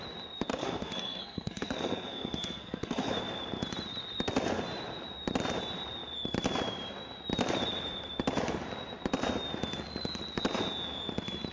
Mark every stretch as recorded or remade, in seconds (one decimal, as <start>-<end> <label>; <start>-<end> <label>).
0.0-0.5 recorded; 0.5-3.1 remade; 3.1-11.5 recorded